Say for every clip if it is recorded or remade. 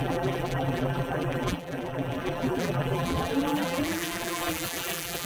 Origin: remade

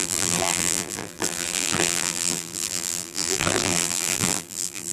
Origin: remade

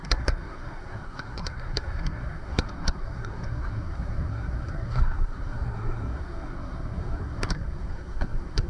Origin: remade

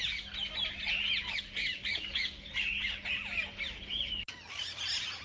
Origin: recorded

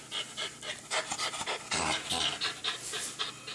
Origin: recorded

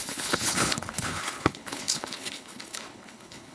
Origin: remade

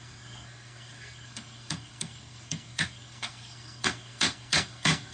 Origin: remade